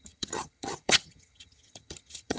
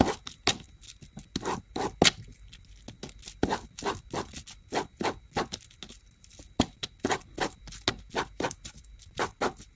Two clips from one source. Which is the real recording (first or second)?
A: second